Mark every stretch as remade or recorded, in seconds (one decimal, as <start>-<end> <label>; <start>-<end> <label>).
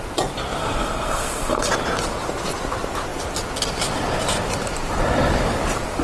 0.0-0.6 recorded; 0.6-1.7 remade; 1.7-6.0 recorded